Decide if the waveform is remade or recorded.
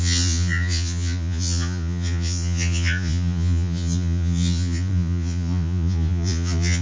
remade